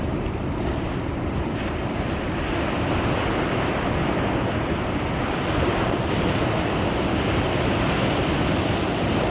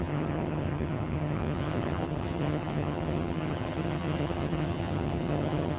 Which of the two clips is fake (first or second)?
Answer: second